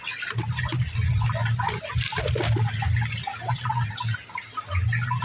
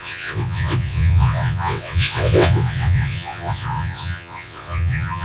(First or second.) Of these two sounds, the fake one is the second